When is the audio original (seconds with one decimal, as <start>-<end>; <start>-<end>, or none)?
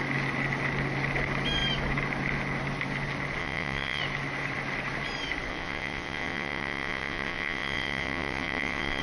0.0-3.4; 4.0-5.5